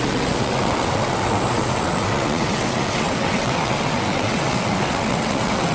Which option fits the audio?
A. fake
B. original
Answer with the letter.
A